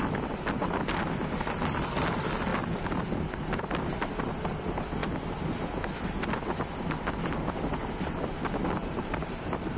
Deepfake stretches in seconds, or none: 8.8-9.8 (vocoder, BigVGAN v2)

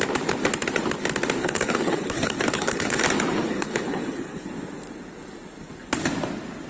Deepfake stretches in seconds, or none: 1.4-3.0 (codec, HILCodec); 3.4-4.5

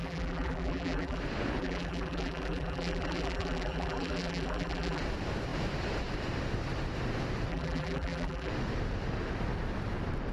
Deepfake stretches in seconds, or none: 0.0-1.2 (vocoder, BigVGAN v2); 1.6-5.0; 7.5-8.5

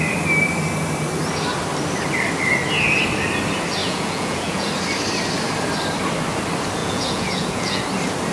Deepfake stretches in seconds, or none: 3.8-4.7 (vocoder, Vocos); 6.8-7.8

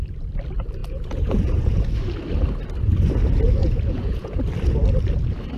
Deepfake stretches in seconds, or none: 0.8-1.8 (vocoder, Vocos); 3.6-4.4

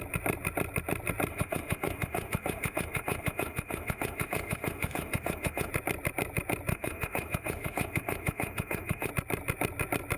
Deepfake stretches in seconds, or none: 1.3-5.7 (autoencoder, DAC-VAE); 6.7-9.1

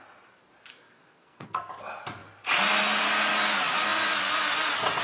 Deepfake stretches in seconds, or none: 0.7-1.7 (codec, SNAC)

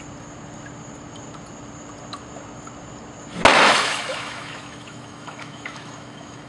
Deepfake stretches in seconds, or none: 3.5-6.5 (autoencoder, DAC-VAE)